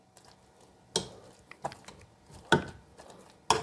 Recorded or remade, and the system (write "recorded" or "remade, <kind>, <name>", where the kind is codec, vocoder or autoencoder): recorded